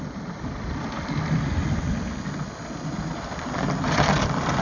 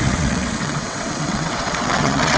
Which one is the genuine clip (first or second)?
first